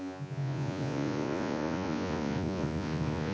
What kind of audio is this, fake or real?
fake